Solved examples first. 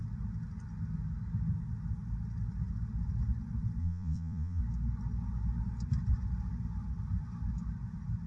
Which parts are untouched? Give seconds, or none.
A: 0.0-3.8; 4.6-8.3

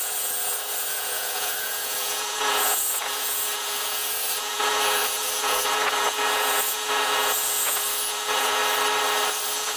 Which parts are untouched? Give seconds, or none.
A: 8.6-9.4

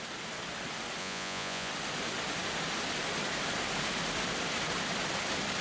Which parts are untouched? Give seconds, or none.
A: 0.0-1.0; 1.7-5.6

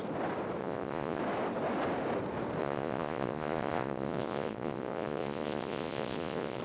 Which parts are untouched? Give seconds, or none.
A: 0.0-0.6; 1.2-2.6

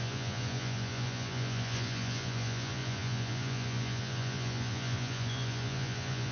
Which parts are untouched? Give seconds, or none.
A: none

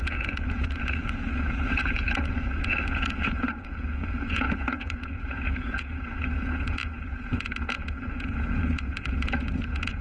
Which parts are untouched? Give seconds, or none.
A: none

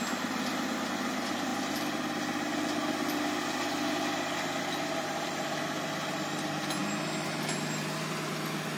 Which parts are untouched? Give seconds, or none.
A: 0.0-8.8